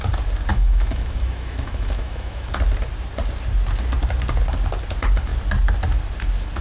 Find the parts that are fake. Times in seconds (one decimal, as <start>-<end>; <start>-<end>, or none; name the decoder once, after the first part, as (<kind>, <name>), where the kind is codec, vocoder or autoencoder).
0.5-2.5 (autoencoder, DAC-VAE)